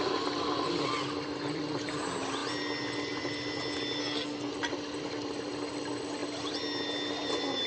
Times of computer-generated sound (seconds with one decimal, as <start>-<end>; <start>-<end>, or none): 4.0-4.5